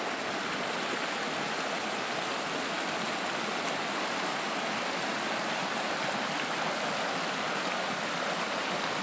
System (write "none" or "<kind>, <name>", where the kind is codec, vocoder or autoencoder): none